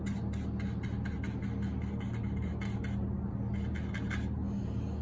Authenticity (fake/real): real